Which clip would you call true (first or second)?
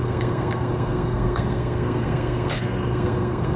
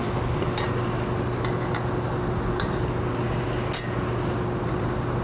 second